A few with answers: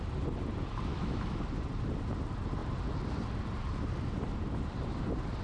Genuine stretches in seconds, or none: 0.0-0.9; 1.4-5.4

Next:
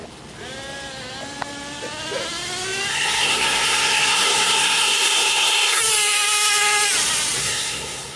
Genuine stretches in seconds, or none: 0.0-2.9; 5.8-7.4

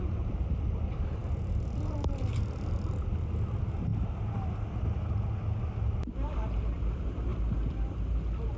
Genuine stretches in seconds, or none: 3.9-6.1

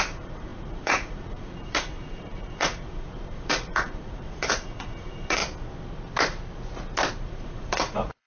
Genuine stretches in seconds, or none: 5.4-7.2

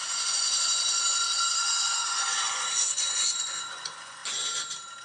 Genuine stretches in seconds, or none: 4.2-5.0

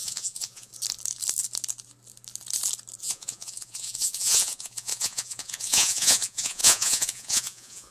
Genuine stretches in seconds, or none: 0.7-3.0

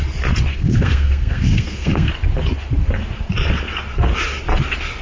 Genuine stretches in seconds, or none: 0.0-0.5; 2.1-5.0